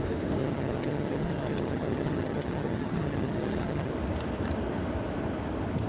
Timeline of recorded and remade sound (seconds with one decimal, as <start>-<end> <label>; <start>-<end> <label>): 0.0-0.4 recorded; 0.4-3.9 remade; 3.9-5.9 recorded